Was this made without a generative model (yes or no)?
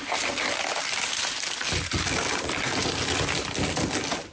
yes